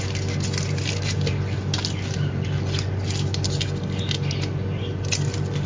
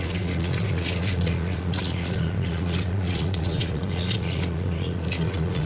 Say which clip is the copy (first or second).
second